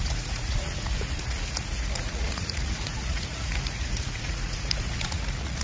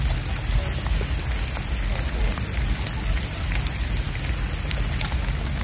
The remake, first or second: first